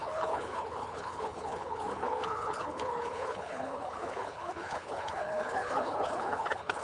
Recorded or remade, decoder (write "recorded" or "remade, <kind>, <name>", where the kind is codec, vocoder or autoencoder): remade, codec, HILCodec